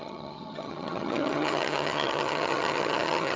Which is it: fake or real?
fake